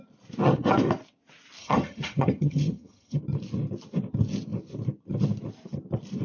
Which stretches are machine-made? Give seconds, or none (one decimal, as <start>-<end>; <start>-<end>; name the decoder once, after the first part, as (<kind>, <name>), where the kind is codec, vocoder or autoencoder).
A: 1.6-3.2 (vocoder, HiFi-GAN)